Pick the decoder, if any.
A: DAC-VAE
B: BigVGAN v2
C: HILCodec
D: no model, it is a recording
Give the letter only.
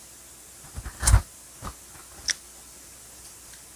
D